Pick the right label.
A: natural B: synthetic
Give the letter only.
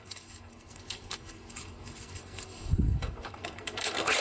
B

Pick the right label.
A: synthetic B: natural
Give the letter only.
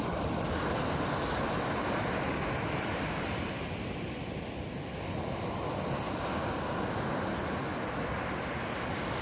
B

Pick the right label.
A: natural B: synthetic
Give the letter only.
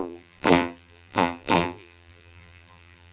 B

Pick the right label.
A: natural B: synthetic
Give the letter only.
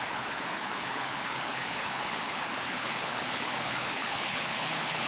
B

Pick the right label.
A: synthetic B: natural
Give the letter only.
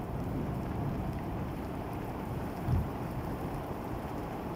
A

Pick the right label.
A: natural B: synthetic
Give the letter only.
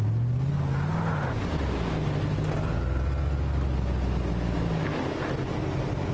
A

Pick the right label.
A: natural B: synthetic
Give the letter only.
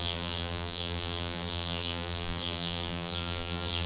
B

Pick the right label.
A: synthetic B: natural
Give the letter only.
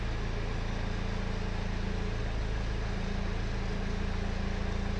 B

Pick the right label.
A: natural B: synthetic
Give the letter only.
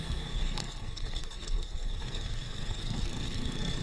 B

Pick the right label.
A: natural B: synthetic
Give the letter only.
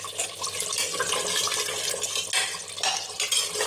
A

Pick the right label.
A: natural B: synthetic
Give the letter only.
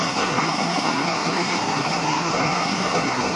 B